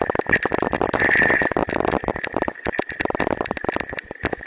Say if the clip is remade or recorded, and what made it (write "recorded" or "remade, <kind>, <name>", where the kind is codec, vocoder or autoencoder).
recorded